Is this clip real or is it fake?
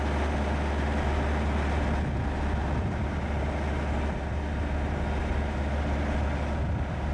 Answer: real